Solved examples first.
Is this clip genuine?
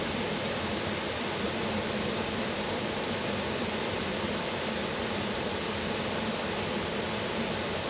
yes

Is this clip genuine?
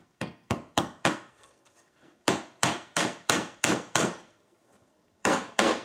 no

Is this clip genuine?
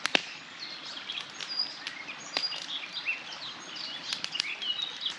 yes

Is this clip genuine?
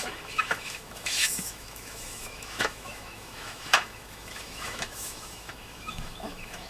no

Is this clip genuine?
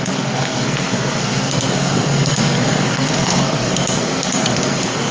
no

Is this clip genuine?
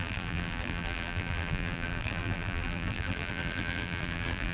no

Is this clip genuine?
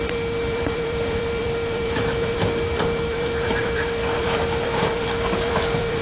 no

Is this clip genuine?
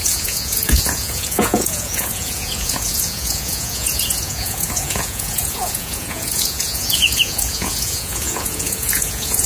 no